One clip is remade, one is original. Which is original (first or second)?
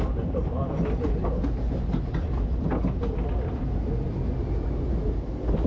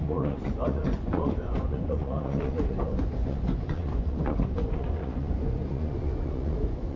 first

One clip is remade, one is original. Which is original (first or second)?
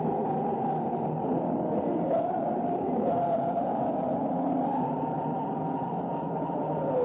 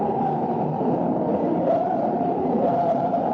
first